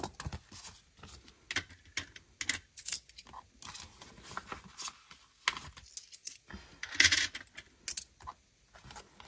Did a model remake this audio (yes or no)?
no